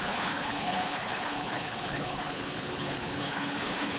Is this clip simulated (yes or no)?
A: yes